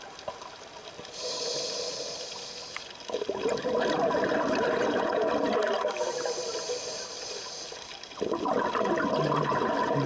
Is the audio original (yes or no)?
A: yes